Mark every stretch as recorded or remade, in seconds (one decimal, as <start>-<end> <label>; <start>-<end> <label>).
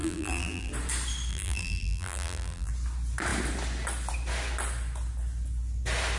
0.0-0.7 remade; 0.7-1.3 recorded; 1.3-2.7 remade; 2.7-6.2 recorded